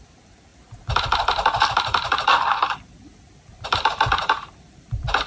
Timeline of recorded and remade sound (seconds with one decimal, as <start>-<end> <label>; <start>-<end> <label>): 0.0-0.5 remade; 0.5-1.7 recorded; 1.7-3.1 remade; 3.1-3.9 recorded; 3.9-5.3 remade